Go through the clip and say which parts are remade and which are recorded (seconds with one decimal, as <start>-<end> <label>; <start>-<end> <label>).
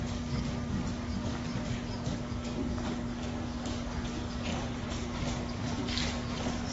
0.0-4.5 remade; 4.5-5.2 recorded; 5.2-6.7 remade